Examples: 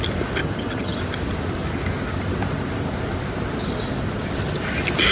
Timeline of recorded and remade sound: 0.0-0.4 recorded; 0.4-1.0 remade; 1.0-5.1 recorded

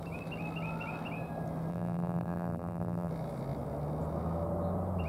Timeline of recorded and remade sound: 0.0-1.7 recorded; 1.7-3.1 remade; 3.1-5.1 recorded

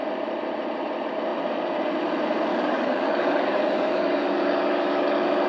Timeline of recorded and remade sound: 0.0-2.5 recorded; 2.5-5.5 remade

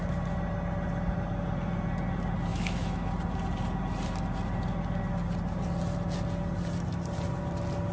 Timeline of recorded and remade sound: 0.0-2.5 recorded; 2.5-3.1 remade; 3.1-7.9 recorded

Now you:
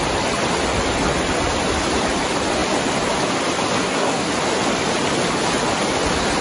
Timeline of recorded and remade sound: 0.0-3.8 recorded; 3.8-4.3 remade; 4.3-6.4 recorded